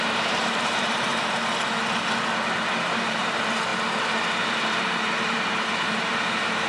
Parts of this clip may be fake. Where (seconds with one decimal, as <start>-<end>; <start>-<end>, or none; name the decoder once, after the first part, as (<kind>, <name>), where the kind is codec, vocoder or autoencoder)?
0.0-1.1 (vocoder, BigVGAN v2); 2.7-3.7; 4.5-6.7